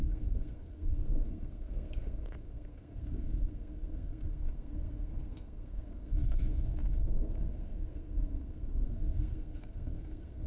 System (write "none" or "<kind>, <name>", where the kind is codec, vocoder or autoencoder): codec, SNAC